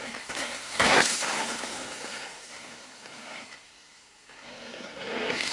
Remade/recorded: remade